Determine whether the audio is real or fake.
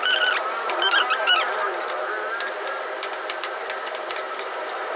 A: real